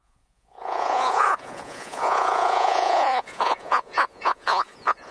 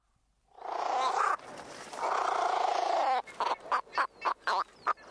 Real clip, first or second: second